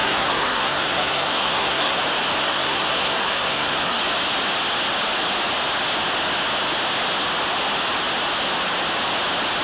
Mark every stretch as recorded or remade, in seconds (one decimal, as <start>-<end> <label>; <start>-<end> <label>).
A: 0.0-2.0 remade; 2.0-2.4 recorded; 2.4-4.0 remade; 4.0-9.6 recorded